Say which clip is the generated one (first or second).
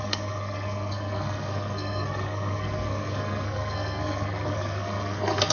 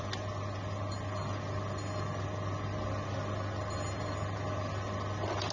first